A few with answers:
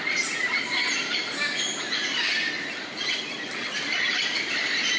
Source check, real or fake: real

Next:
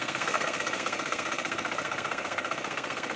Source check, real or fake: fake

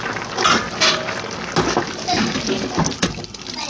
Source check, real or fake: real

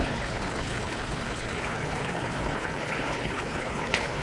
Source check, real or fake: fake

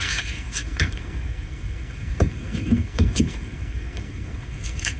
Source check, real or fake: fake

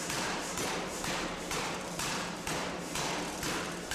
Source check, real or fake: fake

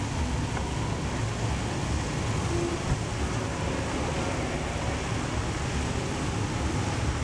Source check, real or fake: real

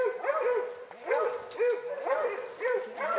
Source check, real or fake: real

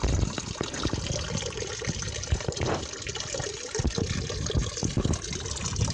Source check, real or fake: real